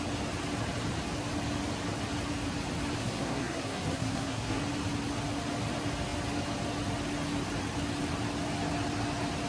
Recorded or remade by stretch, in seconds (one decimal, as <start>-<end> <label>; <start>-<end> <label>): 0.0-3.0 recorded; 3.0-4.6 remade; 4.6-9.5 recorded